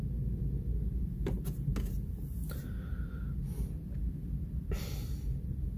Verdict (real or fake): real